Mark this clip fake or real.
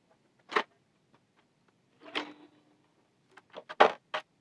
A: real